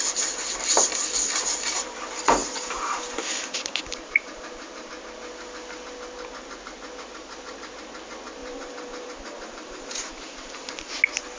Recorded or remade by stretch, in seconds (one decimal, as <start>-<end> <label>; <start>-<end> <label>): 0.0-2.4 recorded; 2.4-4.9 remade; 4.9-8.4 recorded; 8.4-10.9 remade; 10.9-11.4 recorded